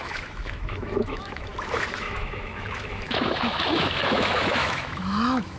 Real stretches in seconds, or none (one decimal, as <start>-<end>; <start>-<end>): none